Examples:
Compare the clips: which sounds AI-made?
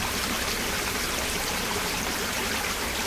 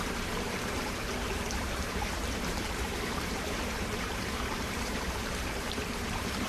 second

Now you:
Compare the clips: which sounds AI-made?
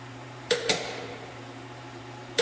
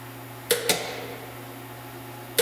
first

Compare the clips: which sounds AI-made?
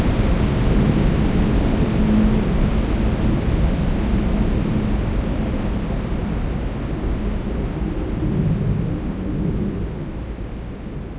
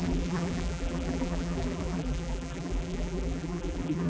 second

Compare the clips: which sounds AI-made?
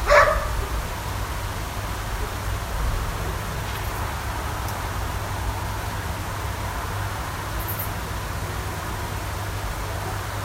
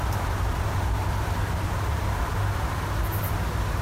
second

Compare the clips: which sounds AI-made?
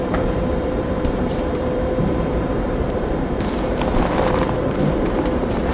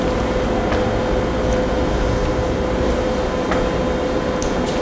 first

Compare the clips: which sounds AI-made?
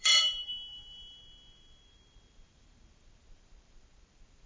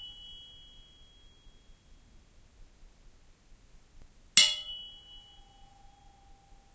first